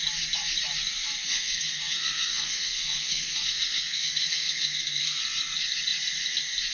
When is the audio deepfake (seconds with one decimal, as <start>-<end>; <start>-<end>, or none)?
1.2-5.2